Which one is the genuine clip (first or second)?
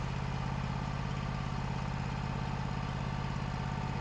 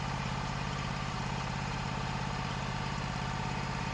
first